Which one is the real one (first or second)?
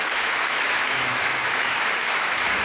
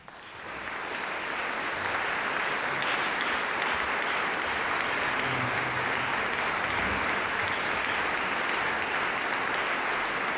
second